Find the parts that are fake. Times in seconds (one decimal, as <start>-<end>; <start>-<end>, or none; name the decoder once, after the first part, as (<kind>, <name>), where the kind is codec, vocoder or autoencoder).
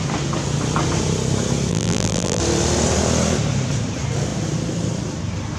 1.7-2.4 (vocoder, BigVGAN v2)